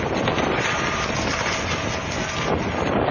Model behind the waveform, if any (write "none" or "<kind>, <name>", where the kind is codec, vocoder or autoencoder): none